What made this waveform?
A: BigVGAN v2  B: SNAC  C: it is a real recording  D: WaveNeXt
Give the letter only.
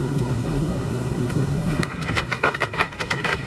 B